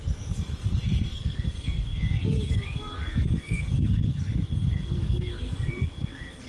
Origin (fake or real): fake